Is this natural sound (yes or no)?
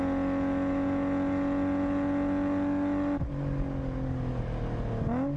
yes